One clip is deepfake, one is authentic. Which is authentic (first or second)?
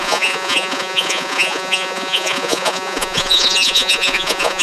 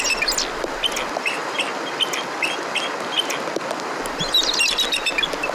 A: second